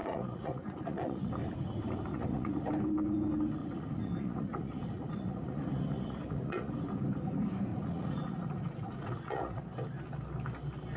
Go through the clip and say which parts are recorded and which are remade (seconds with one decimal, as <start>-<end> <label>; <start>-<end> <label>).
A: 0.0-1.3 remade; 1.3-2.1 recorded; 2.1-2.7 remade; 2.7-3.6 recorded; 3.6-6.7 remade; 6.7-7.7 recorded; 7.7-9.6 remade; 9.6-11.0 recorded